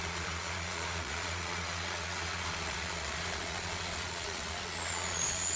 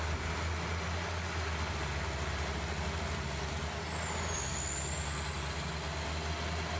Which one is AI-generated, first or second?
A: first